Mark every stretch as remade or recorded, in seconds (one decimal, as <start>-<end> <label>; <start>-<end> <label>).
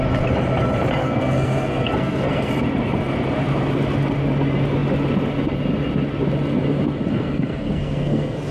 0.0-1.0 recorded; 1.0-2.5 remade; 2.5-7.1 recorded; 7.1-8.5 remade